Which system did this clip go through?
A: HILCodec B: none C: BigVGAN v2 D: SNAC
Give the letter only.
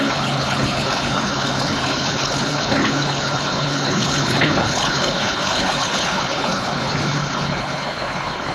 A